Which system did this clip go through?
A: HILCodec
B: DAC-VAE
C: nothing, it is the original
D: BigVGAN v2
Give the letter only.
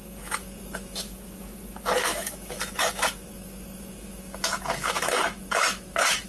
B